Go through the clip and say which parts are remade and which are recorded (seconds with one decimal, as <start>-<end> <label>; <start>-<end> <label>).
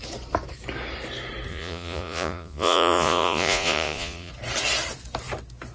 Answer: 0.0-1.5 recorded; 1.5-4.3 remade; 4.3-5.7 recorded